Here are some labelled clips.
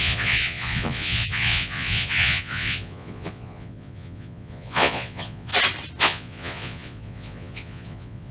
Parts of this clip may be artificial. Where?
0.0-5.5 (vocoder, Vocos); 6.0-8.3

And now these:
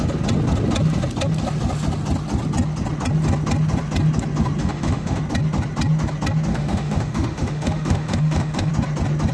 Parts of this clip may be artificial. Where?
4.6-5.2 (autoencoder, DAC-VAE); 6.5-8.7

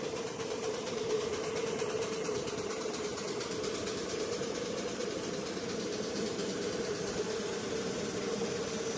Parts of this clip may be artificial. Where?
0.0-3.1 (vocoder, BigVGAN v2); 4.0-9.0